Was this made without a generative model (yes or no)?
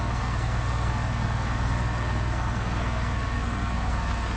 no